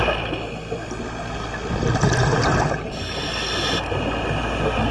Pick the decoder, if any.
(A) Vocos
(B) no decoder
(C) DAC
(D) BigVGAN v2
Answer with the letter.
B